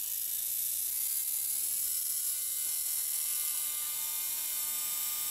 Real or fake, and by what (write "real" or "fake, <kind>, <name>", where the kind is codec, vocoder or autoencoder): real